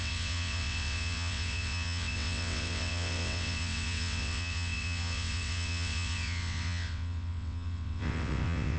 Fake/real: fake